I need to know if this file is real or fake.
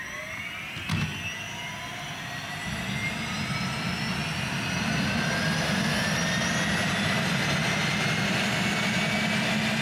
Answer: real